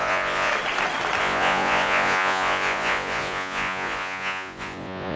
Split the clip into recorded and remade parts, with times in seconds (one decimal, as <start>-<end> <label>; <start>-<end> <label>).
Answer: 0.0-0.5 remade; 0.5-1.2 recorded; 1.2-5.2 remade